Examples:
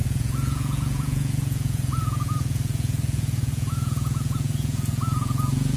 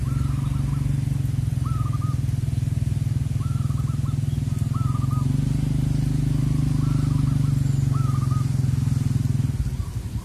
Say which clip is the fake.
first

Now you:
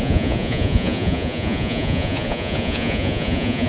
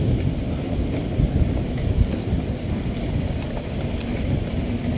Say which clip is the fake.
first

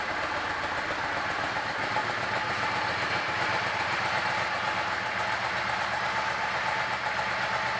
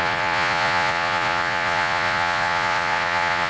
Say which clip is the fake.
second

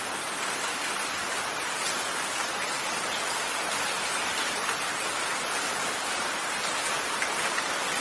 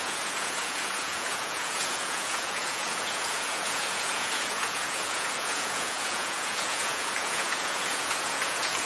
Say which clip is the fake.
second